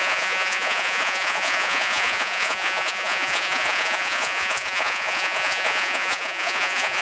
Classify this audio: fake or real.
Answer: fake